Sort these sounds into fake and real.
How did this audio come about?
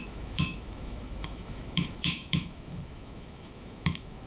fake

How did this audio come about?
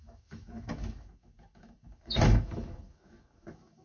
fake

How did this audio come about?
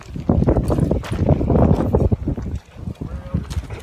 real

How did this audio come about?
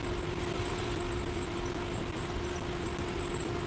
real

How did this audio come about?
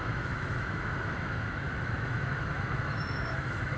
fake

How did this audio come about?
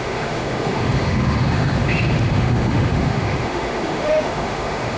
fake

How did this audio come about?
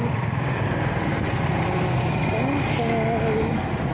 real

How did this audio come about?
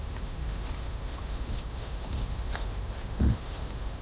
fake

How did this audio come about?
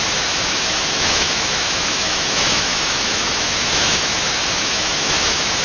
fake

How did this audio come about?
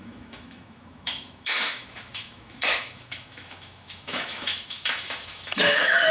fake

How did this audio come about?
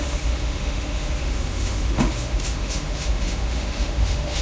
fake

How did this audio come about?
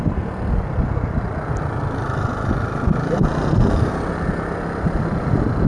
real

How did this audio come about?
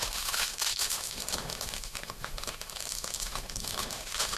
fake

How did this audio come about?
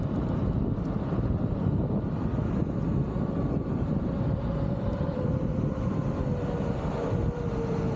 real